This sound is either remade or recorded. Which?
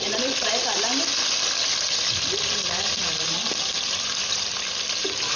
remade